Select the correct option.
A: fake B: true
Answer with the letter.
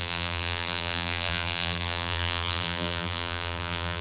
A